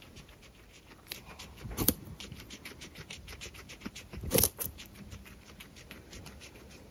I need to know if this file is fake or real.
fake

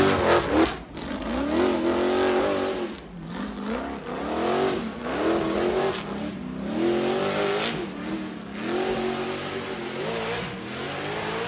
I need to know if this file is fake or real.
real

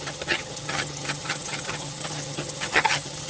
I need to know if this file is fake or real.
fake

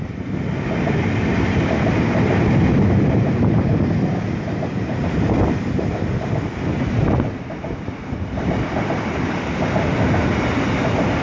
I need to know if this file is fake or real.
real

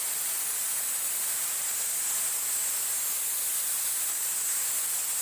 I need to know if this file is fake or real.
real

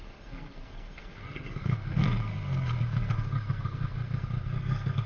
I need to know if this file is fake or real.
fake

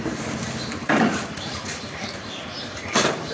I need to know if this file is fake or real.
fake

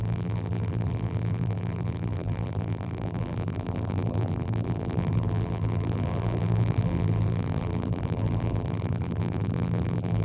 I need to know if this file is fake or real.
fake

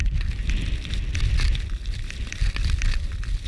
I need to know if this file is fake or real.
fake